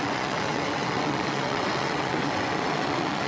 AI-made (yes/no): yes